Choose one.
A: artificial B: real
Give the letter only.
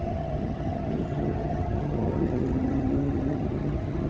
A